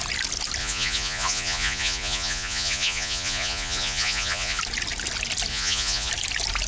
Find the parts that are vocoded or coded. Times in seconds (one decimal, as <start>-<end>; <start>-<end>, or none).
0.6-4.6; 5.5-6.1